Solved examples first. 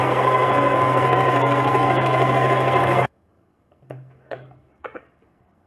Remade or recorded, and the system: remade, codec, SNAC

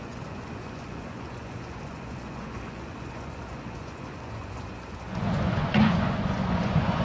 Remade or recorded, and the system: remade, vocoder, Vocos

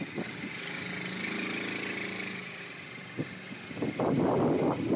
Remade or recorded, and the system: recorded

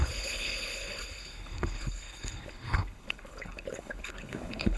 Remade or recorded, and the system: remade, codec, HILCodec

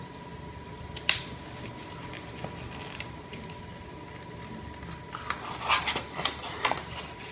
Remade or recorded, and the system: recorded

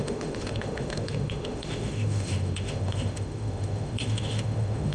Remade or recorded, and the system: remade, autoencoder, DAC-VAE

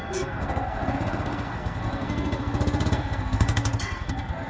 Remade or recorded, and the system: remade, codec, SNAC